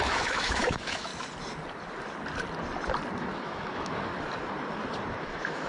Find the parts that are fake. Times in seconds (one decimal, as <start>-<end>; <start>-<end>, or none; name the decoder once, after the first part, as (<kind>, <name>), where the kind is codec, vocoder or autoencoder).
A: 0.0-1.1 (autoencoder, DAC-VAE); 3.2-4.1; 5.2-5.7